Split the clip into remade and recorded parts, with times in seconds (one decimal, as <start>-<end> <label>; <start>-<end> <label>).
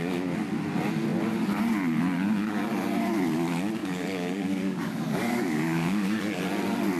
0.0-3.8 recorded; 3.8-6.2 remade; 6.2-7.0 recorded